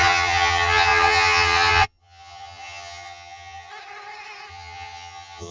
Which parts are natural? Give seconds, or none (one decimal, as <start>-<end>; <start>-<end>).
3.7-4.5